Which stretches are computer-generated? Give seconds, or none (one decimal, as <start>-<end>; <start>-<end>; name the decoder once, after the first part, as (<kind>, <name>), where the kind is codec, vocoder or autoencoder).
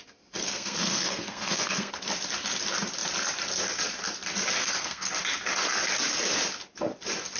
0.4-1.9 (codec, SNAC); 4.6-5.1